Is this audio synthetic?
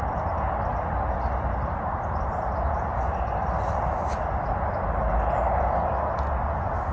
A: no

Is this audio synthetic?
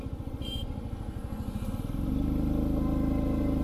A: no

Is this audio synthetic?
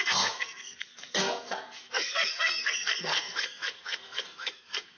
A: yes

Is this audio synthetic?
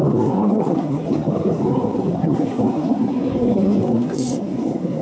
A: yes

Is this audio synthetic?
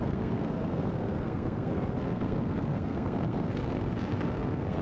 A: yes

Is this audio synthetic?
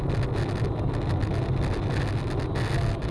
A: no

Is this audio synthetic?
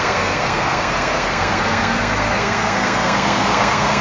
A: yes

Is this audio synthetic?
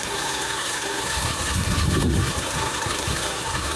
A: yes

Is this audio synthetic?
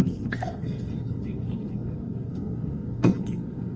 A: yes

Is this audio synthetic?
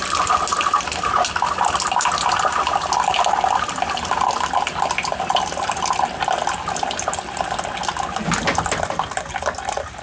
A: no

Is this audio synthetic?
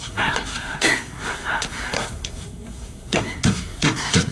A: yes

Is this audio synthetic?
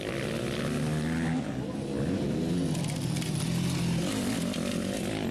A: no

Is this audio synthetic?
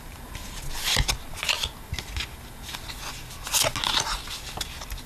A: no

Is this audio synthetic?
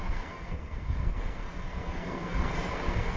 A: yes